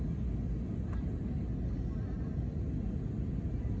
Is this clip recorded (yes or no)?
yes